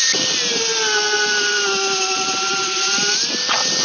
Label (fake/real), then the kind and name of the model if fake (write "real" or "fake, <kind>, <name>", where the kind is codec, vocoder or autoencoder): real